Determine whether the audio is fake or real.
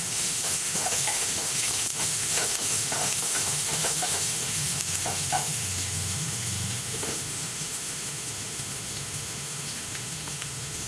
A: fake